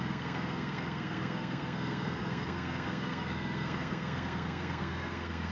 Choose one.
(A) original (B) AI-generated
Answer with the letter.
B